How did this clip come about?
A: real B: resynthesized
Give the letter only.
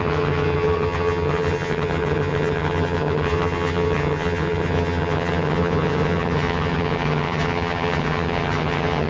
B